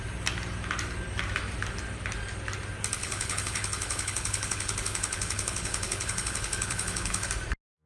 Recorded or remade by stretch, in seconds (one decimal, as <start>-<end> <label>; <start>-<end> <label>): 0.0-3.0 recorded; 3.0-7.3 remade; 7.3-7.9 recorded

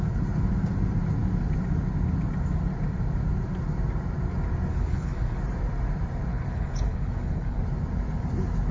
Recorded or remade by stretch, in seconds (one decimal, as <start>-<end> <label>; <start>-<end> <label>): 0.0-4.7 recorded; 4.7-5.4 remade; 5.4-6.3 recorded; 6.3-7.6 remade; 7.6-8.7 recorded

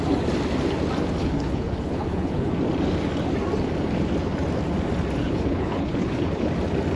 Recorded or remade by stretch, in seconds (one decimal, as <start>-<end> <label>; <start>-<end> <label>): 0.0-1.2 recorded; 1.2-2.5 remade; 2.5-5.2 recorded; 5.2-6.5 remade; 6.5-7.0 recorded

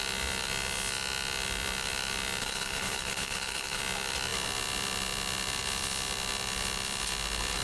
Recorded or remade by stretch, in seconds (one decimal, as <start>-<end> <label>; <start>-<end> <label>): 0.0-2.4 recorded; 2.4-3.8 remade; 3.8-7.6 recorded

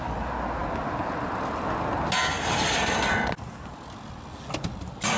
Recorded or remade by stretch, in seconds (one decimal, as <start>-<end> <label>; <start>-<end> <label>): 0.0-5.2 recorded

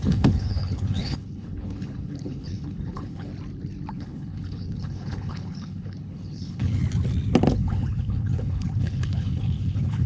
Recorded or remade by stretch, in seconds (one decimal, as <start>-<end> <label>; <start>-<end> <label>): 0.0-3.3 remade; 3.3-3.9 recorded; 3.9-6.8 remade; 6.8-7.5 recorded; 7.5-10.1 remade